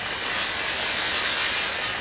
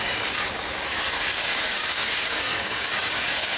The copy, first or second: second